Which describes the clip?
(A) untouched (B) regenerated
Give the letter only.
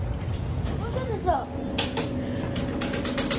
A